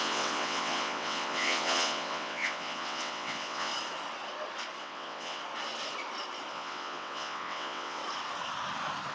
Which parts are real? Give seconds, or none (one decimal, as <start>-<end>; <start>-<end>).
3.7-4.8; 5.4-6.5; 8.0-9.1